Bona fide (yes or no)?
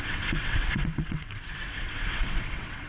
no